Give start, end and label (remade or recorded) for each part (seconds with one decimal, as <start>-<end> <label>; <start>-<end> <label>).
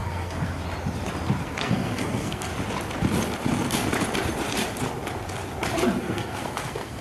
0.0-0.6 remade; 0.6-1.4 recorded; 1.4-2.5 remade; 2.5-6.0 recorded; 6.0-7.0 remade